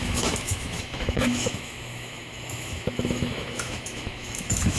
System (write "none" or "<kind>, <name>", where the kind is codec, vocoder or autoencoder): autoencoder, DAC-VAE